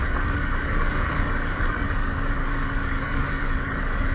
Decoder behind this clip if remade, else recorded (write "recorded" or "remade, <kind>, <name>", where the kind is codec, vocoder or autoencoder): remade, codec, DAC